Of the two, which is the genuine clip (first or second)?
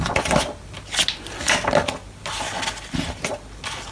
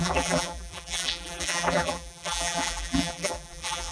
first